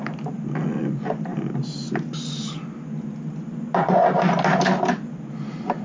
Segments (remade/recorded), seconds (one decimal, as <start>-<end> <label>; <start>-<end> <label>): 0.0-5.8 recorded